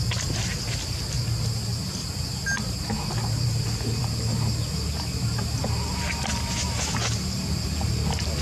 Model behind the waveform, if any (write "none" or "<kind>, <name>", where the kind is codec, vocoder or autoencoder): none